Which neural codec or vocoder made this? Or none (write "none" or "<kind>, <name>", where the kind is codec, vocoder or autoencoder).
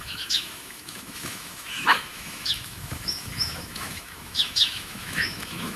autoencoder, DAC-VAE